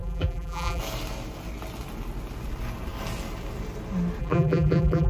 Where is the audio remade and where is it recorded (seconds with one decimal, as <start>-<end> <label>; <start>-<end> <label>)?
0.0-0.8 remade; 0.8-4.2 recorded; 4.2-5.1 remade